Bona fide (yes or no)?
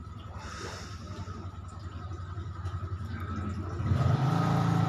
yes